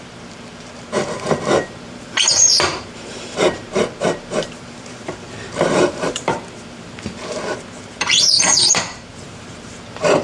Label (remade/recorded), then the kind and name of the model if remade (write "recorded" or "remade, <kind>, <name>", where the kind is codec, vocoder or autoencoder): remade, vocoder, BigVGAN v2